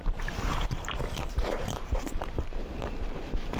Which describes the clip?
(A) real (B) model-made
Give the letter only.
B